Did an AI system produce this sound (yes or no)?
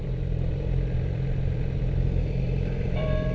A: yes